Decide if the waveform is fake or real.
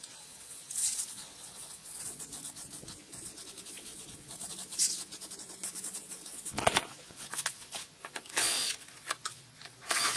fake